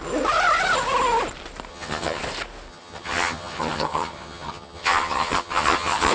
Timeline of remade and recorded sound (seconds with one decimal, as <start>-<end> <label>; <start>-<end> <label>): 0.0-1.7 recorded; 1.7-2.2 remade; 2.2-2.7 recorded; 2.7-6.1 remade